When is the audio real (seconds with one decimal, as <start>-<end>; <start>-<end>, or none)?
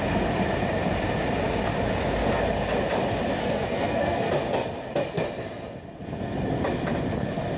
0.0-3.4; 4.3-7.6